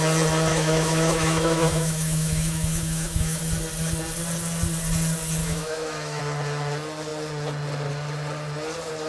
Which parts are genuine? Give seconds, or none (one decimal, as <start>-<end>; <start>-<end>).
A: 0.0-0.5; 3.4-5.4; 6.2-9.1